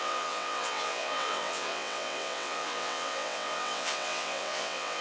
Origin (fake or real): fake